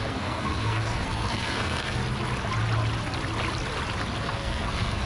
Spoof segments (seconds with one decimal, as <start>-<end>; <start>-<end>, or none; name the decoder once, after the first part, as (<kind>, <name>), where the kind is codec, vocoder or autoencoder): 0.0-2.0 (codec, SNAC); 4.2-5.1